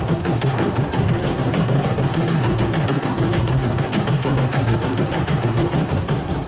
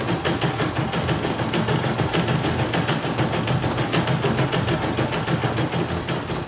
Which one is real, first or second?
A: second